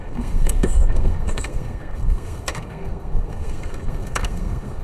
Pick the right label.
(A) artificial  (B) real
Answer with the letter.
A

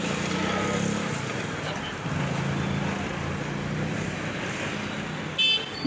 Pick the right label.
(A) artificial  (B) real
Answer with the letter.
B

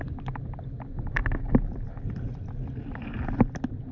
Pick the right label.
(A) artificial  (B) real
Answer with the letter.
B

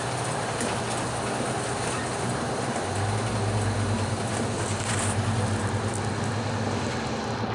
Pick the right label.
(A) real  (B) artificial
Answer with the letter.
A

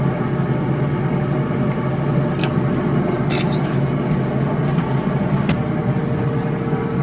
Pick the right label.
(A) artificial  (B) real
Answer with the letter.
B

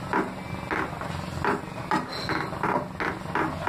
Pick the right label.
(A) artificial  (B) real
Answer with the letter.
B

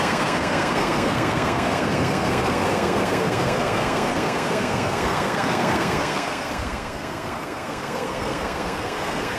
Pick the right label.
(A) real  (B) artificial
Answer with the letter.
B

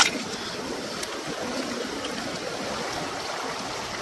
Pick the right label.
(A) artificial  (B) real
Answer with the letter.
B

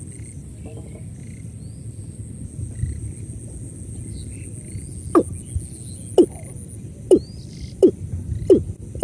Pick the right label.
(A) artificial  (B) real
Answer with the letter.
B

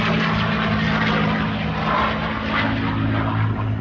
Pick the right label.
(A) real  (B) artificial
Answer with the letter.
A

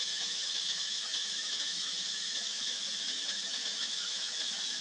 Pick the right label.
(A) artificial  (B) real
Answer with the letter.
A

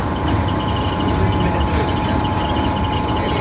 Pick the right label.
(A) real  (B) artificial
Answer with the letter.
B